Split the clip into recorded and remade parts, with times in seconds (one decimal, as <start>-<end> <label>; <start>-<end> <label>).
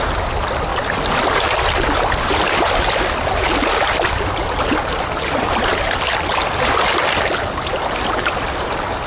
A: 0.0-9.1 recorded